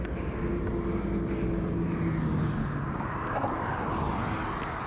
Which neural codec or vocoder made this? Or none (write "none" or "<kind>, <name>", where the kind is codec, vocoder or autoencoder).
none